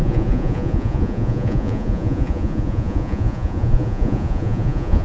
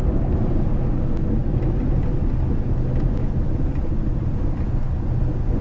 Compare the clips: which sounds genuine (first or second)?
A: second